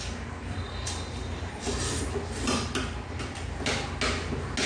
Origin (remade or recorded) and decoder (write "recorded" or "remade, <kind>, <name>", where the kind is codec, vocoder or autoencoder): recorded